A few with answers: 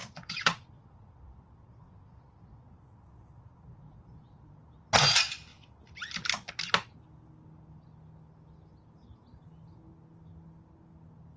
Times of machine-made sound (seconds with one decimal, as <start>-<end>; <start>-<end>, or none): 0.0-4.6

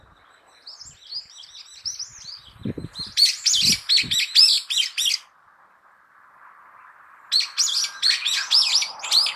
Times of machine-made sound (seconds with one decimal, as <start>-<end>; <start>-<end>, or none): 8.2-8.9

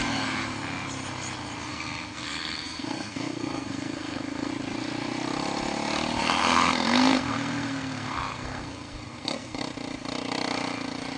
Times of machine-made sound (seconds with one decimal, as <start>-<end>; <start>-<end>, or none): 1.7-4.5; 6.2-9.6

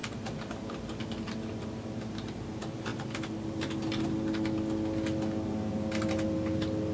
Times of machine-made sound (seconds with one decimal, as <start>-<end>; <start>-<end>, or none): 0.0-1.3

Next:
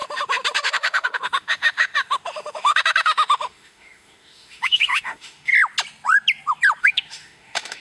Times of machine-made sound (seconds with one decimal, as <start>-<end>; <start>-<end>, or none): 0.0-5.5; 6.8-7.8